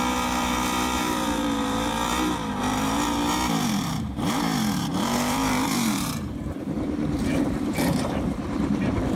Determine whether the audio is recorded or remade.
remade